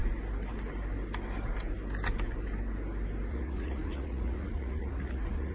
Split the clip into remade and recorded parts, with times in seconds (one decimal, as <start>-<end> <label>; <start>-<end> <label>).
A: 0.0-3.3 recorded; 3.3-5.5 remade